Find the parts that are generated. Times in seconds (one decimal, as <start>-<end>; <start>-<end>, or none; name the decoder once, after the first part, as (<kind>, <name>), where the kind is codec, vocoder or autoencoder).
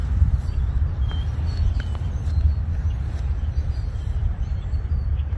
3.2-5.4 (vocoder, BigVGAN v2)